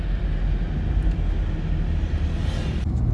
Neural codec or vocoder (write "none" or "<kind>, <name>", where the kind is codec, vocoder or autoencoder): none